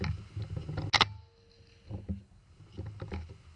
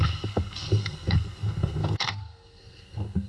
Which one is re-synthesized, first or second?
second